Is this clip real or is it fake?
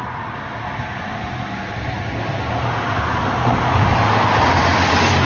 real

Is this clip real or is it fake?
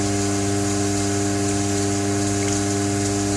real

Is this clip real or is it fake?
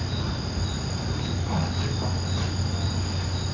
real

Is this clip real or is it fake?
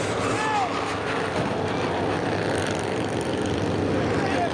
real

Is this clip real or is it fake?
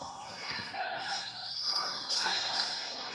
fake